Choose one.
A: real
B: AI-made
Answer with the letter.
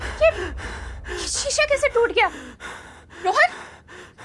A